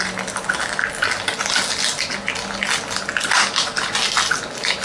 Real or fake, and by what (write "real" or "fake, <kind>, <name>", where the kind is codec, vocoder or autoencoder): real